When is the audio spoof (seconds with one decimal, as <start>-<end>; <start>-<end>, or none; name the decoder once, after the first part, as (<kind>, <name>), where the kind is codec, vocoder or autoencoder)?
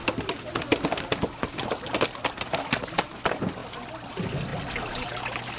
none